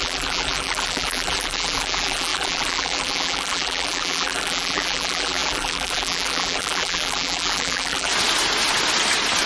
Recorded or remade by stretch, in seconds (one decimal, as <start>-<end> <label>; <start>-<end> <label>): 0.0-8.1 remade; 8.1-9.5 recorded